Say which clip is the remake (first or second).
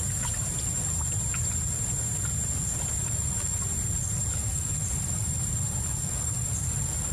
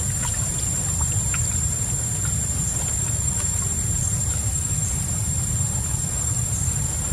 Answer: second